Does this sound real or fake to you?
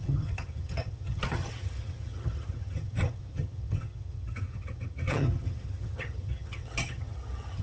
fake